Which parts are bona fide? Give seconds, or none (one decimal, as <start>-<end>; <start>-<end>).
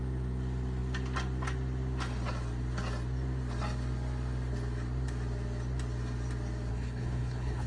0.0-6.7